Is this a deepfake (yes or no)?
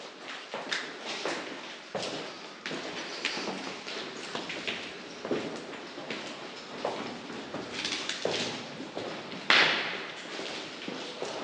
no